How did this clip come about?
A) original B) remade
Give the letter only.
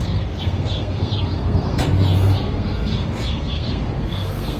B